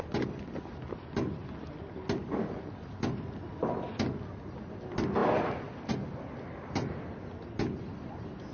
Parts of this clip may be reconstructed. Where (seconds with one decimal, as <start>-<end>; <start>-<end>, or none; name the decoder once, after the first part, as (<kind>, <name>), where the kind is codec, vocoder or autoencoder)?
none